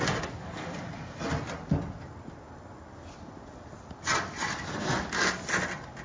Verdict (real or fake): real